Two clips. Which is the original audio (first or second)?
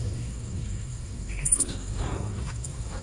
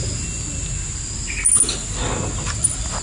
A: second